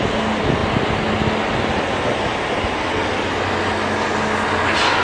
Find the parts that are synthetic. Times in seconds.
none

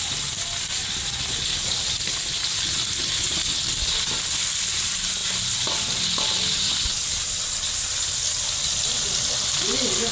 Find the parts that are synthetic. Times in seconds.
none

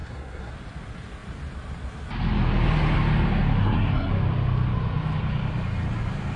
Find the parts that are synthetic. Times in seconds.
0.0-0.5 (codec, SNAC); 3.6-4.1

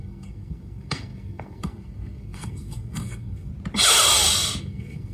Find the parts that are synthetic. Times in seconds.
0.0-3.5 (codec, SNAC); 4.6-5.1

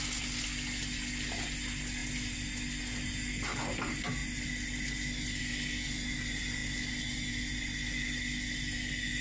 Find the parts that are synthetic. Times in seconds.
none

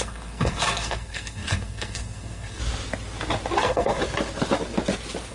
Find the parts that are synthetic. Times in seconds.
0.0-2.6 (codec, SNAC); 3.6-4.0

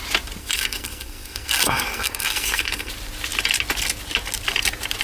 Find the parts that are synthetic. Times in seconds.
0.4-2.9 (codec, SNAC)

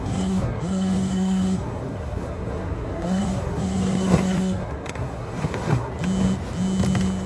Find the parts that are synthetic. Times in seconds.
0.0-5.9 (codec, SNAC)